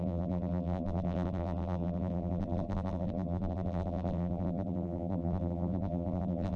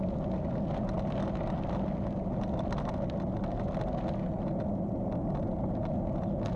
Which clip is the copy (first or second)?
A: first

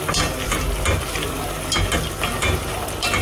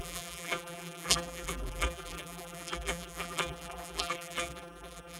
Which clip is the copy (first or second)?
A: second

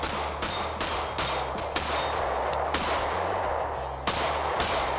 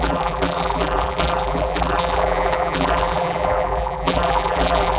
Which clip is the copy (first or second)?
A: second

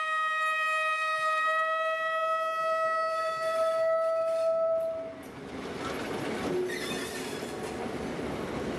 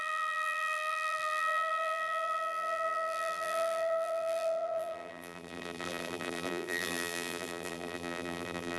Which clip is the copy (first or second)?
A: second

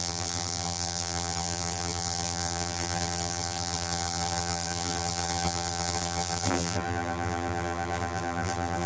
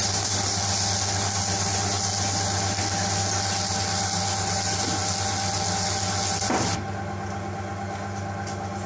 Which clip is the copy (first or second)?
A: first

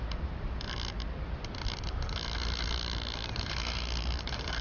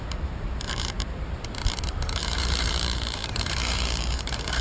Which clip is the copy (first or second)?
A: second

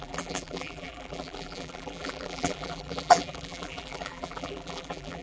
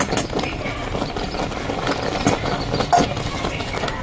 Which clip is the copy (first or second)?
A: first